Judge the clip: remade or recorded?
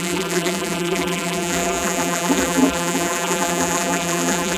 remade